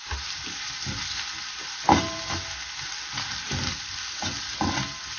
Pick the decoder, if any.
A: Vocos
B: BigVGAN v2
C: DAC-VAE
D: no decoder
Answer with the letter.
D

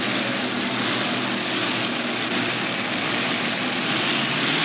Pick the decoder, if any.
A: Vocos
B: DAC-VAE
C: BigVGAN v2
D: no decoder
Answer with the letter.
D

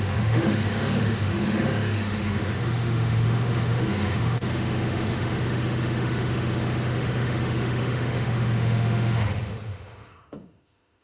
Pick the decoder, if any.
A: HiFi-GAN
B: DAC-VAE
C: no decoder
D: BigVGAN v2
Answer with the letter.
B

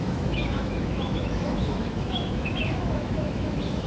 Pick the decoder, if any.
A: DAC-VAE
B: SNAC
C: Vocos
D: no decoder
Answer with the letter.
A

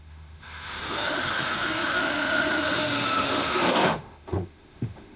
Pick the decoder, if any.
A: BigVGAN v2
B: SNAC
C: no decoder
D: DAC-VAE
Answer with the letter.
D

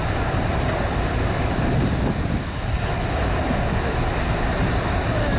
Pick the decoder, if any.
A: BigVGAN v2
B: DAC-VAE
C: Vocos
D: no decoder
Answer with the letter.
D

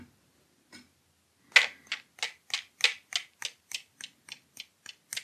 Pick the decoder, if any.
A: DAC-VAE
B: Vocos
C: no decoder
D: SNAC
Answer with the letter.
C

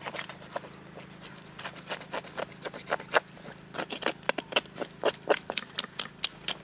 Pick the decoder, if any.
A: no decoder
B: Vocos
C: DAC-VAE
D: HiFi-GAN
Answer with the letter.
A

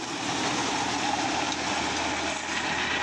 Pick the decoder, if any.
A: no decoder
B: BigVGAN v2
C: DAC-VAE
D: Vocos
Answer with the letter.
A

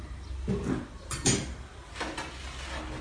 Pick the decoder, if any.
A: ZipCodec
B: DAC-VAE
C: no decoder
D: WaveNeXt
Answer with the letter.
C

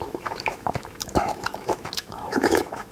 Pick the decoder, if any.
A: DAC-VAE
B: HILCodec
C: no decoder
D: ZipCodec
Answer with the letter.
A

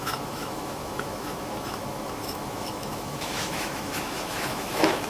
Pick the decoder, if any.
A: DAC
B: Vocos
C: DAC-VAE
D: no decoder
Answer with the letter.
C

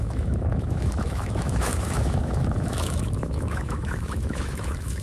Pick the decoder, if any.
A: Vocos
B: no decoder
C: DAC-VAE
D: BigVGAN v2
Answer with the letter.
C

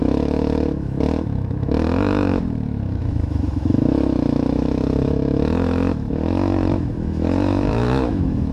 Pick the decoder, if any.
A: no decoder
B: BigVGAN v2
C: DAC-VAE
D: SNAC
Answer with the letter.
C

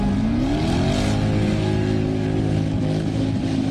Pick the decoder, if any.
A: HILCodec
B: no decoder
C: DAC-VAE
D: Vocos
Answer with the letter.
B